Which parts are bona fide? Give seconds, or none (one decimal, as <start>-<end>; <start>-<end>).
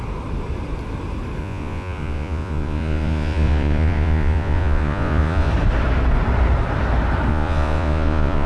0.0-1.4; 5.5-7.3